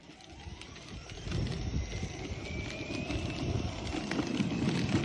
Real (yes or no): yes